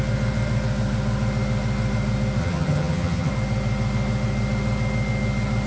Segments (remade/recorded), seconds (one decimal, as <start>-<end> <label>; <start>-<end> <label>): 0.0-2.4 recorded; 2.4-3.3 remade; 3.3-5.7 recorded